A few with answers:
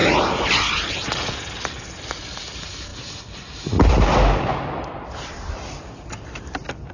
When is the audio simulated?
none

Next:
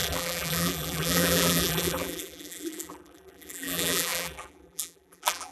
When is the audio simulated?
0.0-5.5 (vocoder, BigVGAN v2)

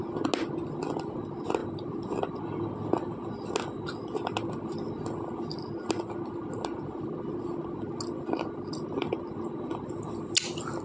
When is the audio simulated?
none

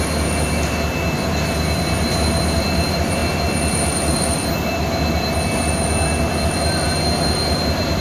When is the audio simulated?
none